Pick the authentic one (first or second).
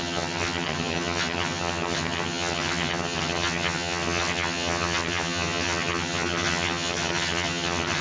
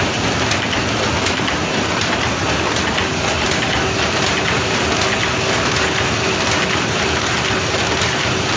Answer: second